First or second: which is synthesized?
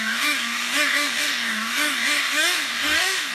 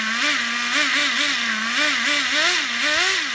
first